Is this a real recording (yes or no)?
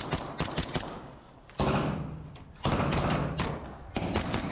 yes